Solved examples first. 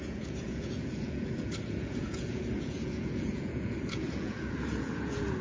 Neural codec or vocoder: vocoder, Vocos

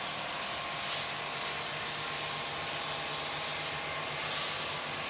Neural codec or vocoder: none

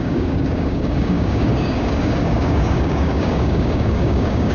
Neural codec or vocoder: codec, DAC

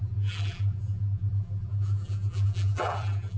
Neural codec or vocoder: vocoder, BigVGAN v2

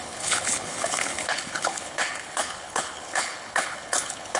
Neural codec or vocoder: codec, HILCodec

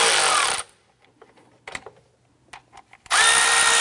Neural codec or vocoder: none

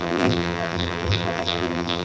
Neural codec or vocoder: vocoder, BigVGAN v2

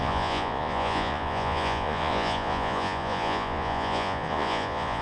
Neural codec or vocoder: vocoder, Vocos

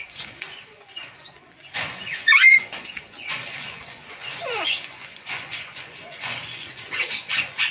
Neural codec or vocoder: vocoder, Vocos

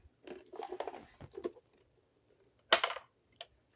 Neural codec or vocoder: none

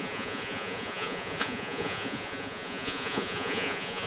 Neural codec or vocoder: vocoder, Vocos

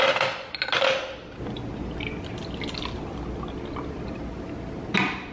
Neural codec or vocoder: none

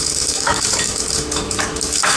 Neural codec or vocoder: autoencoder, DAC-VAE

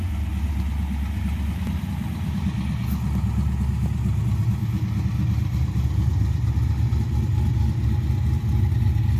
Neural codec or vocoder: none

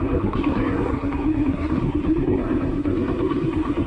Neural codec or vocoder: codec, SNAC